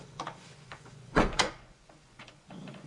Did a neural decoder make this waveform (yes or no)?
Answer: yes